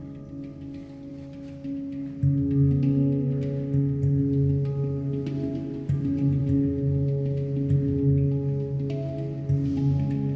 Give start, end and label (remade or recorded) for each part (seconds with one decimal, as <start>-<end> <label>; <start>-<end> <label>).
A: 0.0-10.4 recorded